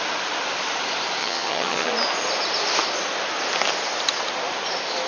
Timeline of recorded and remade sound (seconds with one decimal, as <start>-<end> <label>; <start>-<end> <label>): 0.0-1.2 recorded; 1.2-1.9 remade; 1.9-5.1 recorded